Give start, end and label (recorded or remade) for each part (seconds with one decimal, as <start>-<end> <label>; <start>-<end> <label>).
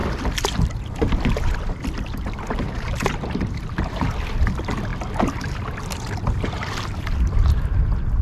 0.0-8.2 recorded